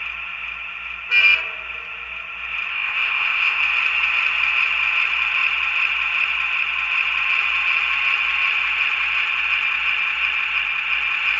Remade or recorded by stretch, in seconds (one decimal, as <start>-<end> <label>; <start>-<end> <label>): 0.0-2.7 recorded; 2.7-3.6 remade; 3.6-11.4 recorded